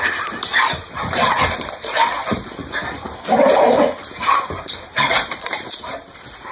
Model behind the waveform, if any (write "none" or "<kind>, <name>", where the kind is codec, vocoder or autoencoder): vocoder, BigVGAN v2